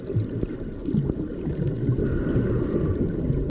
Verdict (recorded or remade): recorded